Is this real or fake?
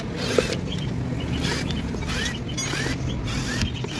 real